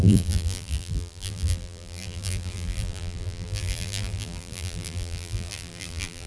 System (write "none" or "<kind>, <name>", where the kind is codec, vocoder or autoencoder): vocoder, BigVGAN v2